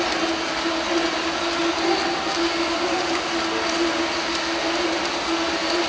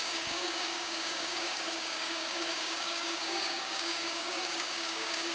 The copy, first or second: second